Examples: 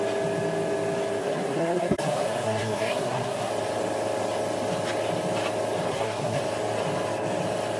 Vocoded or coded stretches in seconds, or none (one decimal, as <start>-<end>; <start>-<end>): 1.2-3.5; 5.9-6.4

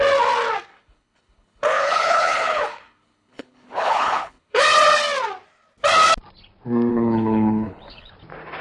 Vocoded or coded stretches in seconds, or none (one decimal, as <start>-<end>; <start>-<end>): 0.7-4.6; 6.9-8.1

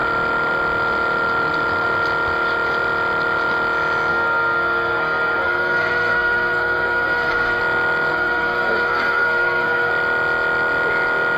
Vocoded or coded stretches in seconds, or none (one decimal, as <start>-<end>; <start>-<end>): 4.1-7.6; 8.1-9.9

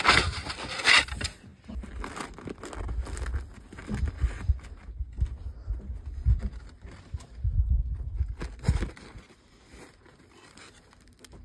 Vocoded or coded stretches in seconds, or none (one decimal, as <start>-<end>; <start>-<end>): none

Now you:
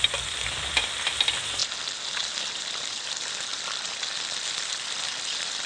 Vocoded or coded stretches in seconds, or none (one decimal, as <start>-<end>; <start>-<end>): 0.0-1.6; 2.4-5.7

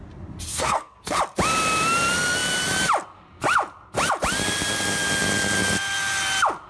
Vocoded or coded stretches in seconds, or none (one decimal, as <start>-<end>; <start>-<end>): 0.5-1.2